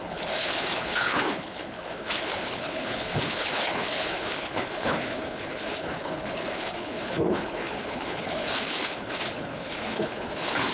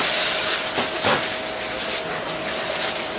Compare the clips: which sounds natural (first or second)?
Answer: second